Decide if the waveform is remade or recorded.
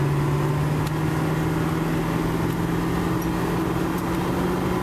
recorded